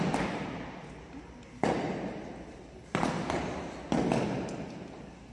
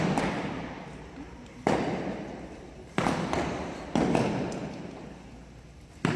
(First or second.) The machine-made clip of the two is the second